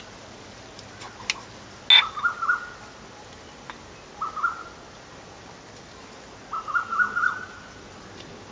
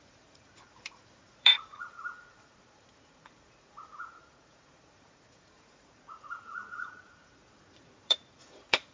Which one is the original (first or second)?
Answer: first